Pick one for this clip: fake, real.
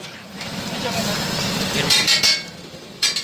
fake